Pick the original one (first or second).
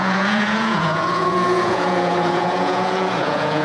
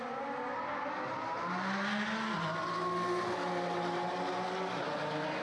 second